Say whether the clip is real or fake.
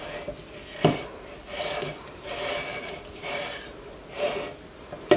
real